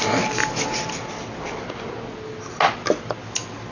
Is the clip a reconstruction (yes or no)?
no